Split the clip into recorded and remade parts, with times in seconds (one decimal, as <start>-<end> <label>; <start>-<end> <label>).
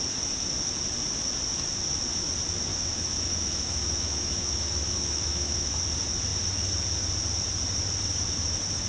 0.0-2.7 recorded; 2.7-5.8 remade; 5.8-8.9 recorded